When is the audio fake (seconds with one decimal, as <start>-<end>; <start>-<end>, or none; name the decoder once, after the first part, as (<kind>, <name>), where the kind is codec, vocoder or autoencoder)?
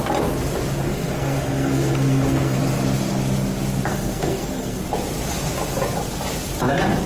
0.9-2.6 (codec, SNAC); 3.9-4.8